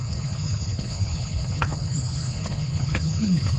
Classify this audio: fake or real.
fake